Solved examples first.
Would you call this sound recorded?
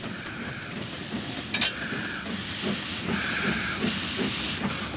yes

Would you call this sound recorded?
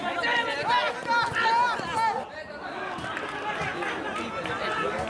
yes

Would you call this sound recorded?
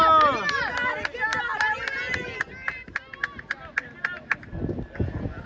yes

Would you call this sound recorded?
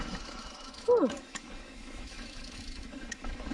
no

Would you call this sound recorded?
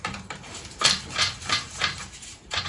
no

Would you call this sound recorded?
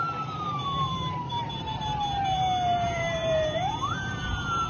no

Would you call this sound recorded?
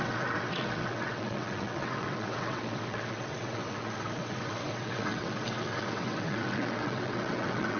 no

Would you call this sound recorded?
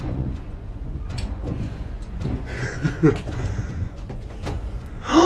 no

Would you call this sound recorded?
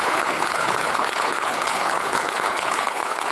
no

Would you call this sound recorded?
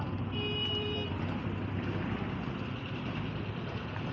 no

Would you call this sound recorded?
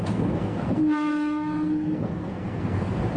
no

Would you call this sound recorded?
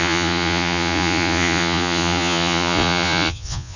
no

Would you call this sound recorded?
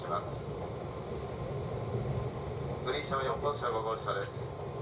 yes